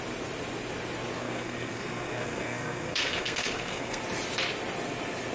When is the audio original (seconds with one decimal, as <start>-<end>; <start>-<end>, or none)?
0.0-1.2; 4.0-5.3